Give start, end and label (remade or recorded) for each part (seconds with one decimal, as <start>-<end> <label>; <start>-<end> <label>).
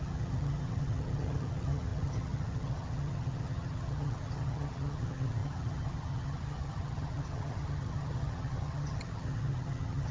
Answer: 0.0-10.1 remade